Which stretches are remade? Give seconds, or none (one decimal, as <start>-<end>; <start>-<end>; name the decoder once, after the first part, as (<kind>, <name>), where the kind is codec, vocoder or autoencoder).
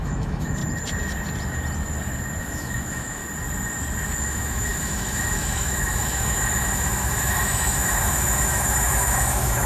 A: 0.0-0.6 (autoencoder, DAC-VAE); 2.4-3.2; 4.2-9.7